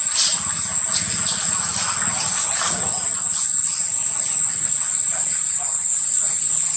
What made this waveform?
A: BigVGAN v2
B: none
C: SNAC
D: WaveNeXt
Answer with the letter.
B